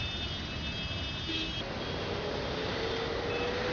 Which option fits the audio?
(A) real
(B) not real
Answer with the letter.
A